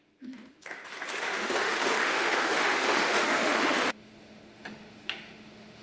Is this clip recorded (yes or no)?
no